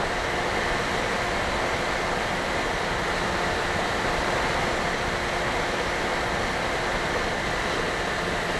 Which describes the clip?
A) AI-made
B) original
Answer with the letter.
B